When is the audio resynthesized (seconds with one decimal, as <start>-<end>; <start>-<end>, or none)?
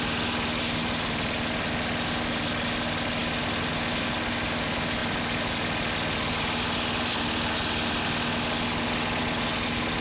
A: none